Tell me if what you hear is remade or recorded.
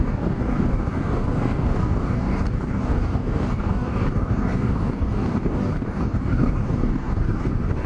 remade